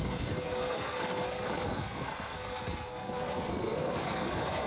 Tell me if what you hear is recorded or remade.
remade